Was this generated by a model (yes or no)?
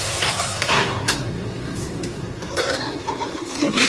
yes